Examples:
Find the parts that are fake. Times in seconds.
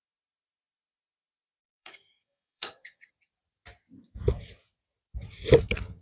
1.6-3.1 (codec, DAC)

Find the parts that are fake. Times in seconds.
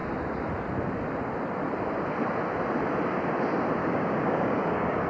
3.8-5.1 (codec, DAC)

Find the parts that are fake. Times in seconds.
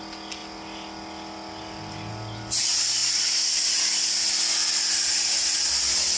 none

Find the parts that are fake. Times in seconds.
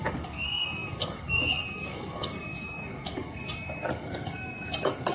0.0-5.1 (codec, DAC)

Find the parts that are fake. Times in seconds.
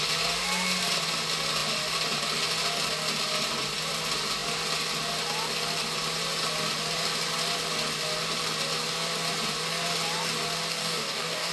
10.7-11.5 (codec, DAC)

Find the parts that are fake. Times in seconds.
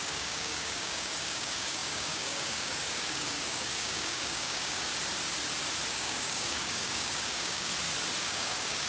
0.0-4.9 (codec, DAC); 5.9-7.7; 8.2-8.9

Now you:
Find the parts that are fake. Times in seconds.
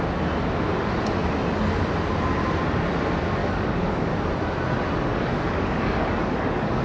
3.4-4.0 (codec, DAC); 5.1-6.8